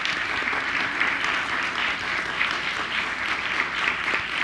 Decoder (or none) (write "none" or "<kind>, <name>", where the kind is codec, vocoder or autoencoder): none